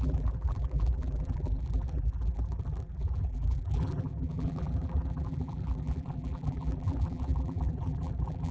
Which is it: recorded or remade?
remade